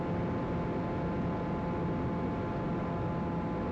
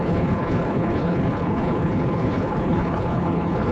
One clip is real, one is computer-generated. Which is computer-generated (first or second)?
second